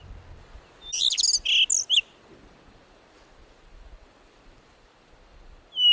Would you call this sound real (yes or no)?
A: yes